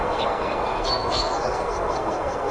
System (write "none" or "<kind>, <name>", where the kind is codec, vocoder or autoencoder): codec, SNAC